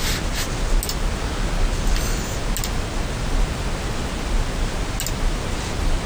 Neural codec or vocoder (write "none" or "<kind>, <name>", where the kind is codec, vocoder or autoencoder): none